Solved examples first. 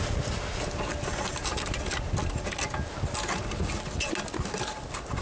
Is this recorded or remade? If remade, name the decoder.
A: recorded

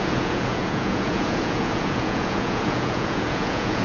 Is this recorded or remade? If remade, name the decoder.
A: remade, vocoder, Vocos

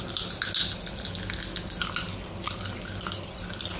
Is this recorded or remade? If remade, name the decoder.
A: recorded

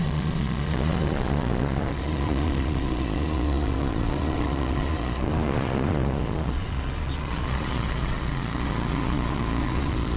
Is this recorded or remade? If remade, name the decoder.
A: remade, vocoder, Vocos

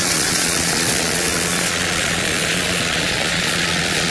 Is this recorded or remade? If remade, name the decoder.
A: remade, vocoder, Vocos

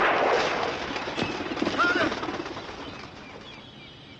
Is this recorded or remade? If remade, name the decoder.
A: recorded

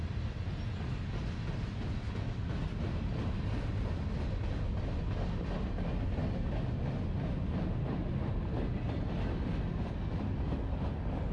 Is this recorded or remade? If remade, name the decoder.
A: recorded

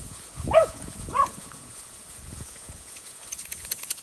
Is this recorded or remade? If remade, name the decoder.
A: remade, vocoder, Vocos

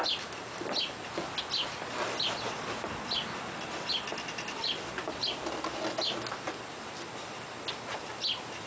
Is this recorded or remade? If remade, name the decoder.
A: recorded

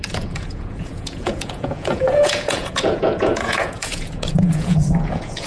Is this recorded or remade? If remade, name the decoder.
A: remade, vocoder, Vocos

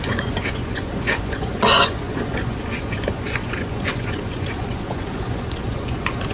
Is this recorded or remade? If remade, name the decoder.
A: remade, vocoder, Vocos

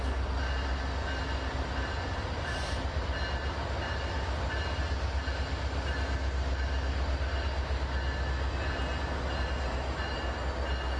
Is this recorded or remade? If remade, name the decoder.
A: recorded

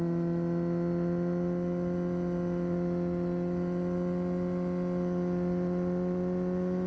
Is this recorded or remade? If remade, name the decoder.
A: recorded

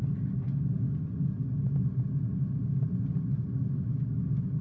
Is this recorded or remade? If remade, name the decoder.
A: recorded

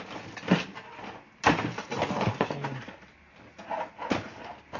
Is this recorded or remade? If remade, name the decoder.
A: recorded